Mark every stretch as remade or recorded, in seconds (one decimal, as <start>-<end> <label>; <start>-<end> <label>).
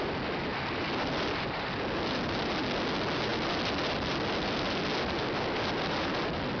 0.0-6.6 recorded